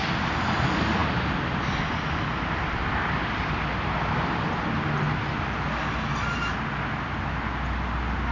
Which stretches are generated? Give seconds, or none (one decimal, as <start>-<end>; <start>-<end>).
none